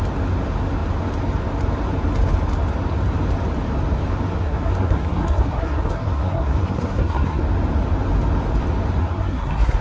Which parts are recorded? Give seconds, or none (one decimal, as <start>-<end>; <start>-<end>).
0.0-4.4; 7.4-9.0